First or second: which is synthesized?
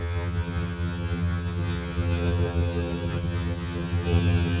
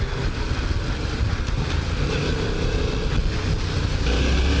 first